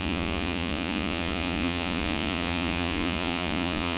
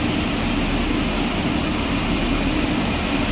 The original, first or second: second